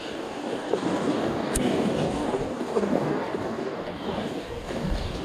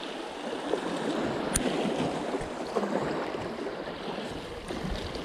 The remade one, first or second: first